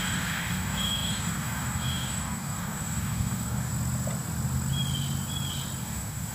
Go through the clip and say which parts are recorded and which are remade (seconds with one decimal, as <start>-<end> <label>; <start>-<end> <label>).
0.0-3.7 remade; 3.7-5.8 recorded; 5.8-6.3 remade